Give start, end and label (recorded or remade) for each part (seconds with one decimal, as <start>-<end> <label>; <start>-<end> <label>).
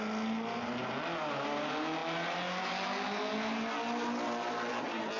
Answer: 0.0-5.2 recorded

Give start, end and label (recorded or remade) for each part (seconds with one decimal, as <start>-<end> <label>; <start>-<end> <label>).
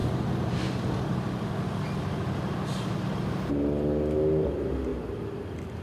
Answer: 0.0-5.8 recorded